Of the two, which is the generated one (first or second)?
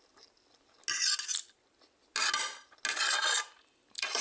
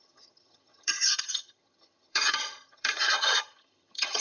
second